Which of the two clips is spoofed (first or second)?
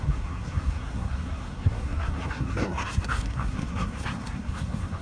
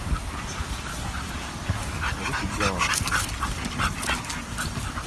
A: first